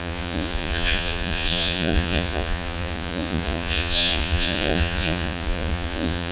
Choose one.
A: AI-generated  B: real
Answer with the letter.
A